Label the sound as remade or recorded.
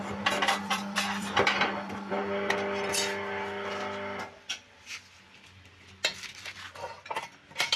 recorded